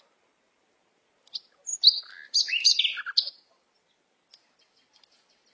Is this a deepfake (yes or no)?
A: no